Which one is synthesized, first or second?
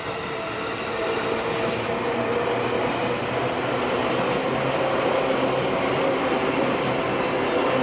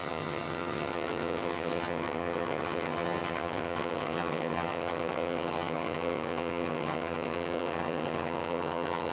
second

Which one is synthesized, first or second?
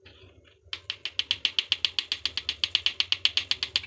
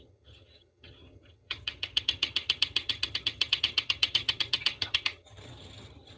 second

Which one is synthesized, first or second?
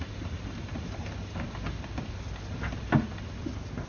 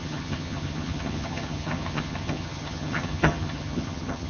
second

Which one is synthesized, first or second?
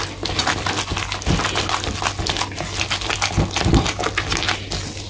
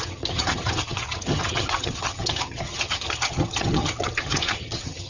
second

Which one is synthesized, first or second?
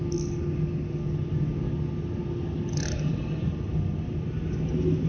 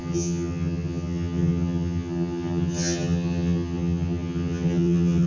second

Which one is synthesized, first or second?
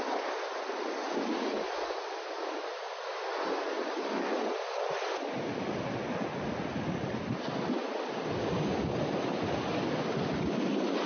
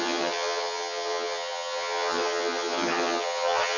second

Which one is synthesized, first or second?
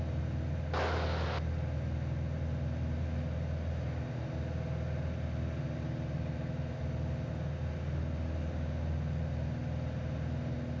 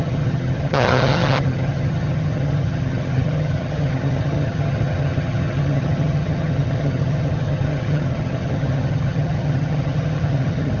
second